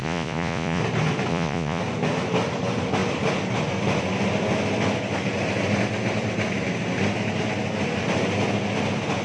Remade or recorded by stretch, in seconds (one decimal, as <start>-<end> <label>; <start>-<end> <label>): 0.0-0.8 remade; 0.8-1.3 recorded; 1.3-1.8 remade; 1.8-9.2 recorded